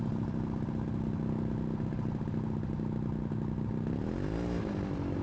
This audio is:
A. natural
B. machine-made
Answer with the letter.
A